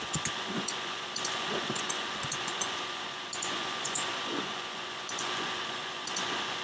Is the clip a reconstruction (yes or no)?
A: yes